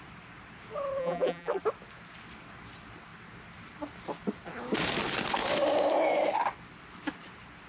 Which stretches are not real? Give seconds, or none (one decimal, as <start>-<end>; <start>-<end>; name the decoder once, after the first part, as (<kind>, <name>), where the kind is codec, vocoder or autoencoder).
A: 1.0-1.6 (vocoder, BigVGAN v2)